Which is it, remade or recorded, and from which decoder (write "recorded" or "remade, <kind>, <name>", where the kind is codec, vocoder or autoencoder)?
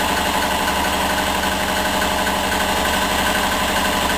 recorded